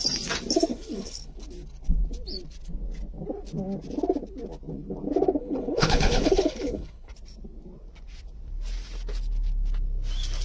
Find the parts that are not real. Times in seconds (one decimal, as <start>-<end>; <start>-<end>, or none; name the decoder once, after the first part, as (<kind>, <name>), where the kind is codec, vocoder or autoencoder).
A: 0.7-1.4 (codec, HILCodec); 5.4-7.1